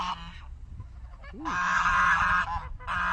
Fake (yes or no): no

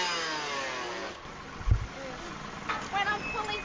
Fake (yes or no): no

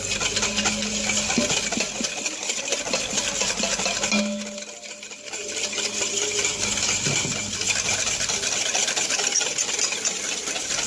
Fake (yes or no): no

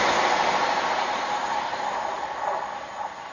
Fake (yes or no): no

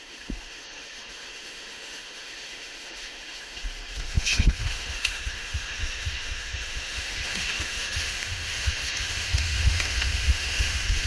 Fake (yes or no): yes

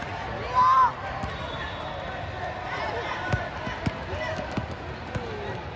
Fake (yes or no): no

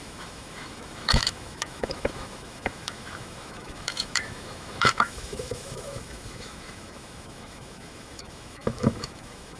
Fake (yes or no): yes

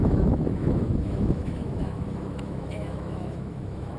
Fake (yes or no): yes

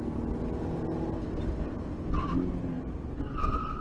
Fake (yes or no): no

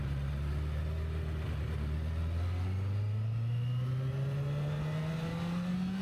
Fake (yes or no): no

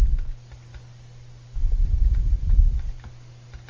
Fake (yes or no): no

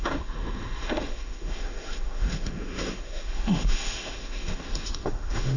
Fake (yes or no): yes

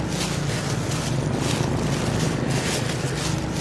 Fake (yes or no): no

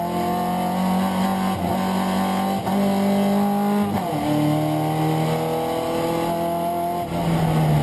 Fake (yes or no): no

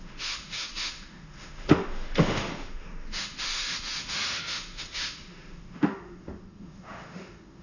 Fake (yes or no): yes